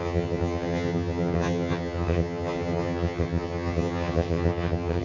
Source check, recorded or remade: remade